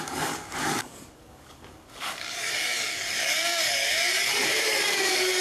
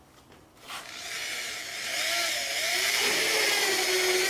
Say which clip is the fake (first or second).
first